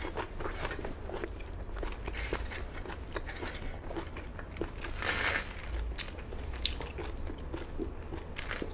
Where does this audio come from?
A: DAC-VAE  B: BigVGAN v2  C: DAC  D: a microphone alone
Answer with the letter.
D